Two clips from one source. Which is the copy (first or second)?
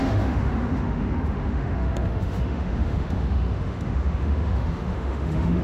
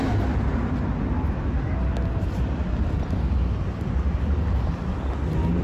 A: first